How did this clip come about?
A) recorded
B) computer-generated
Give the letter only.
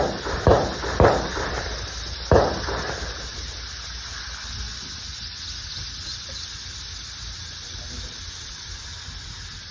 A